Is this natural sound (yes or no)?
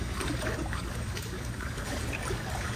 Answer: no